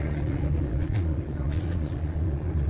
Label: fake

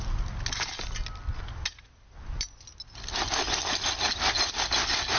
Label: real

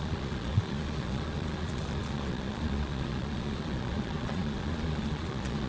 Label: fake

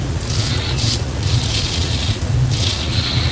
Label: fake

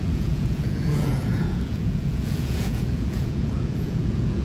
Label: fake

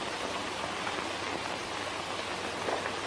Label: real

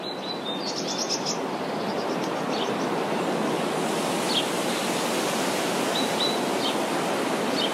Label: real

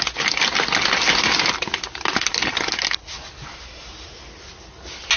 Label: real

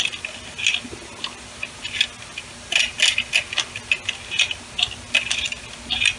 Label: real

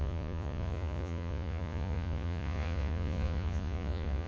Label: fake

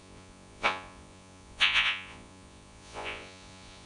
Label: fake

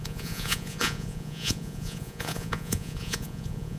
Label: fake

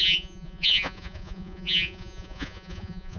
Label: fake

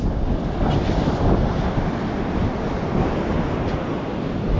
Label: real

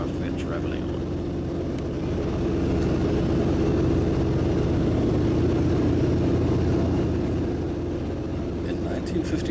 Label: real